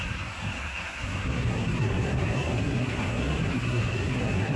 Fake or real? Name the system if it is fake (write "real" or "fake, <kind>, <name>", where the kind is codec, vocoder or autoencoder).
fake, codec, SNAC